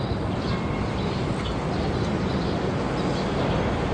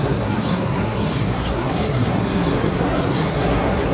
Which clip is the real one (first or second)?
first